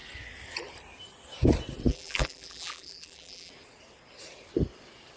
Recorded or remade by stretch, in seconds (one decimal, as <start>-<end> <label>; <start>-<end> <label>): 0.0-1.9 recorded; 1.9-3.5 remade; 3.5-5.2 recorded